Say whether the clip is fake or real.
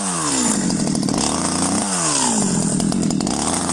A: real